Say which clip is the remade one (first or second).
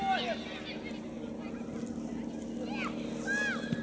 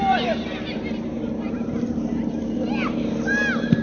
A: second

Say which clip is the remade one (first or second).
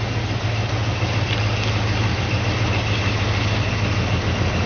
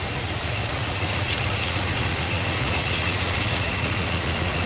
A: second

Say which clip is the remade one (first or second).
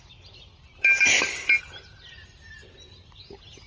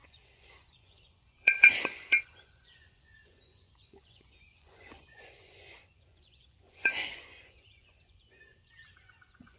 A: second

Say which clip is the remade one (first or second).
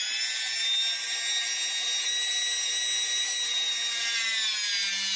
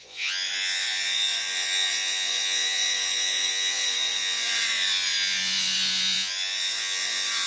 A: second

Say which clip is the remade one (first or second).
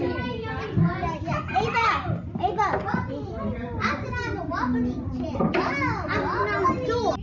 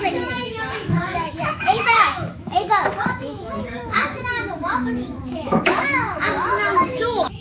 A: second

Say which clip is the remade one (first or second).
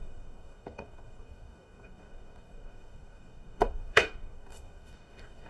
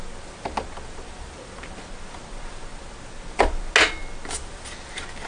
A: first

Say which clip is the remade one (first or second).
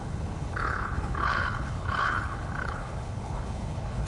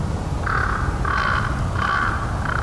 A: first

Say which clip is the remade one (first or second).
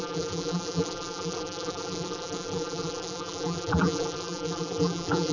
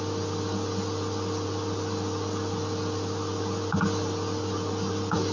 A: first